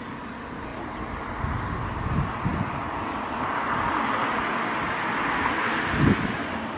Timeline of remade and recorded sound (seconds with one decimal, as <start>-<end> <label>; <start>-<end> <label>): 0.0-6.8 recorded